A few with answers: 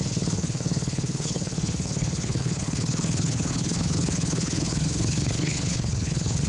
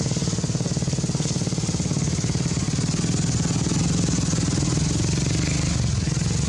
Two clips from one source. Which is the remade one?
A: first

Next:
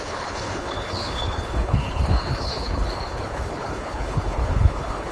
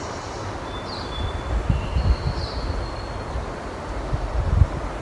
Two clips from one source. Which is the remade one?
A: first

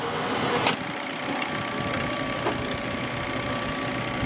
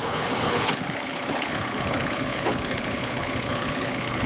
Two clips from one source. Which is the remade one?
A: second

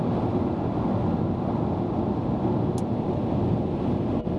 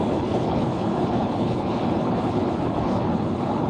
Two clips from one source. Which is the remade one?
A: second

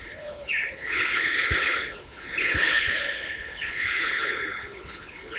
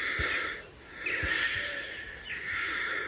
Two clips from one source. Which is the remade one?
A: first